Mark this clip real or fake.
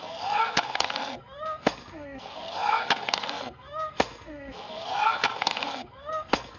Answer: fake